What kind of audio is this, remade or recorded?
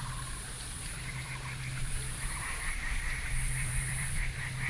remade